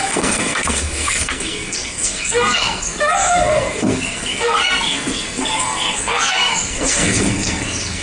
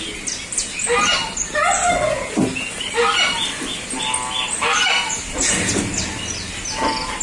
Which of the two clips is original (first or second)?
second